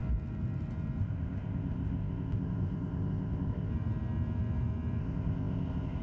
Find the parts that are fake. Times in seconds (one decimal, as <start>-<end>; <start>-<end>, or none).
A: 1.0-3.7; 5.0-6.0